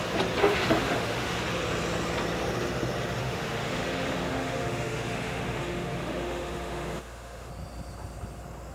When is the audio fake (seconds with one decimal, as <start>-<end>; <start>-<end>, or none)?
0.4-1.4; 3.2-7.5